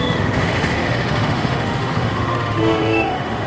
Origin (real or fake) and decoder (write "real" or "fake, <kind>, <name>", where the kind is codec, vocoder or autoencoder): fake, autoencoder, DAC-VAE